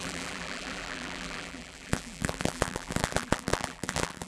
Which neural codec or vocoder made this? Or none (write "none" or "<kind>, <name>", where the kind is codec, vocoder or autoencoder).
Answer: vocoder, BigVGAN v2